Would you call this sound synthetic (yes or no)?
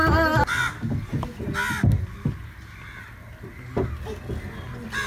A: no